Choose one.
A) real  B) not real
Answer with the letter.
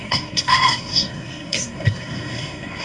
B